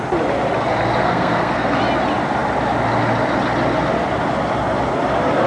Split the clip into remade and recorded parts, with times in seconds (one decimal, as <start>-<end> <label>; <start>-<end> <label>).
0.0-1.0 recorded; 1.0-1.8 remade; 1.8-5.5 recorded